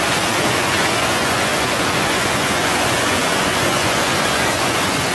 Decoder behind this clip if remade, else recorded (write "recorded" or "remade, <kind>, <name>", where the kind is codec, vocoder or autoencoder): remade, vocoder, Vocos